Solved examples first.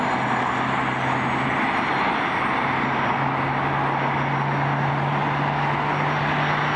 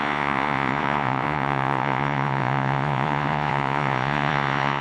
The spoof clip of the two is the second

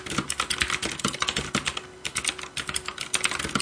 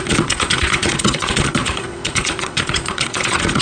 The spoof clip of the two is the second